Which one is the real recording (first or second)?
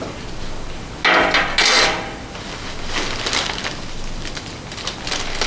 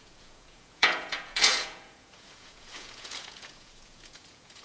first